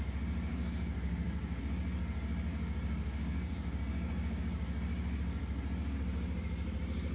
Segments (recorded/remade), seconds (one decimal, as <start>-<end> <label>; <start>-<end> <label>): 0.0-0.5 recorded; 0.5-1.6 remade; 1.6-2.5 recorded; 2.5-4.4 remade; 4.4-7.1 recorded